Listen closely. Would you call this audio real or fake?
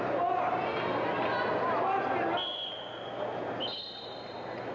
real